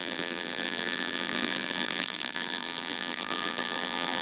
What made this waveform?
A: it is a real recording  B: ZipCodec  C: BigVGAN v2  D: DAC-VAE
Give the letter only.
C